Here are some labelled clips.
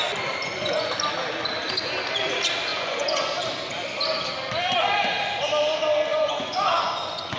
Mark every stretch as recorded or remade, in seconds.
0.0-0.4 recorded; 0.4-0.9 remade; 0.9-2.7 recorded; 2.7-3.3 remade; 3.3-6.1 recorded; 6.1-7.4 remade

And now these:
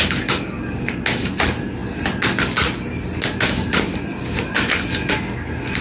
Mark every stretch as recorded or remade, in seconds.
0.0-5.8 recorded

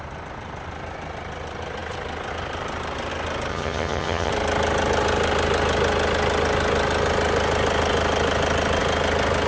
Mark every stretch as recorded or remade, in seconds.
0.0-3.5 recorded; 3.5-4.3 remade; 4.3-9.5 recorded

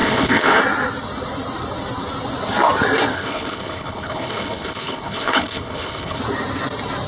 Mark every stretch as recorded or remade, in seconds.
0.0-0.6 remade; 0.6-3.1 recorded; 3.1-6.2 remade; 6.2-7.1 recorded

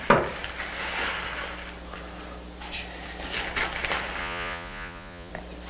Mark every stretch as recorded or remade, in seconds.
0.0-4.2 recorded; 4.2-5.3 remade; 5.3-5.7 recorded